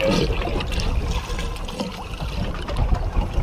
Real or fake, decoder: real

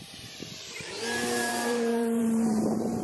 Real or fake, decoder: fake, vocoder, BigVGAN v2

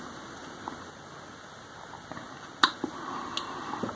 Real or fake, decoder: real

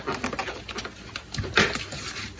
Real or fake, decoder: real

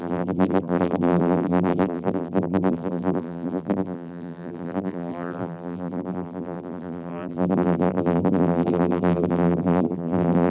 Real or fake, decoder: fake, vocoder, BigVGAN v2